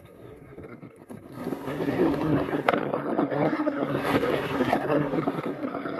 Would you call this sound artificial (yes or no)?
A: yes